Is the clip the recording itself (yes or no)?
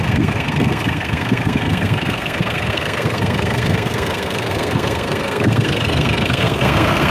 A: no